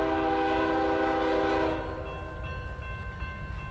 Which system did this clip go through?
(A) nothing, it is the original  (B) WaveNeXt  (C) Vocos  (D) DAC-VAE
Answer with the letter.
A